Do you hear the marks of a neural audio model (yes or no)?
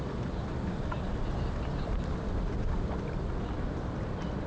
no